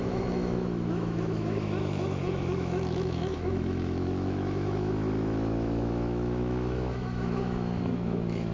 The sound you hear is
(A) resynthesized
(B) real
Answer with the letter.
A